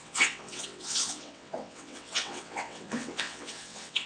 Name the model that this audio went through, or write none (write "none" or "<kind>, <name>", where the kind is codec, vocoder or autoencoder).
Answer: vocoder, WaveNeXt